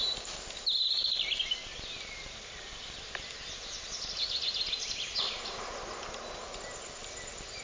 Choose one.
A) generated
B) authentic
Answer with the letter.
B